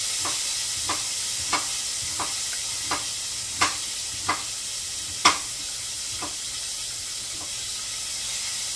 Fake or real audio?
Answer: real